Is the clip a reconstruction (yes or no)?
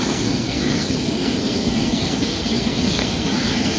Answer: yes